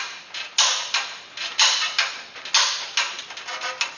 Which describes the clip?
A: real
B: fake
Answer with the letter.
A